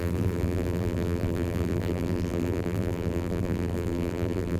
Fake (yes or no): yes